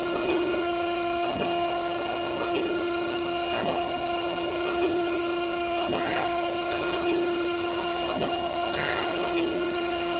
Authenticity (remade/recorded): remade